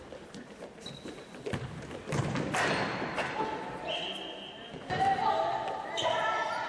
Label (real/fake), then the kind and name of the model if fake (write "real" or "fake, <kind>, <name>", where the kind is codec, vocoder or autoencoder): real